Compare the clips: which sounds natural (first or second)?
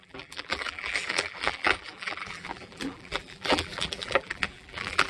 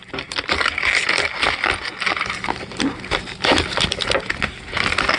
second